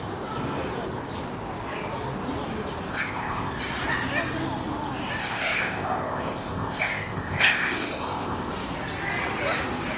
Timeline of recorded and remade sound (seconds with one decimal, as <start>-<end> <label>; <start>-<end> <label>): 0.0-2.9 recorded; 2.9-3.5 remade; 3.5-5.2 recorded; 5.2-8.5 remade; 8.5-10.0 recorded